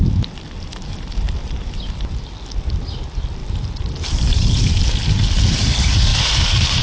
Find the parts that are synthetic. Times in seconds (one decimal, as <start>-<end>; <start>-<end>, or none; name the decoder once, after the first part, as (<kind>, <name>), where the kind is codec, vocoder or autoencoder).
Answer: 1.4-2.3 (vocoder, BigVGAN v2); 3.4-4.7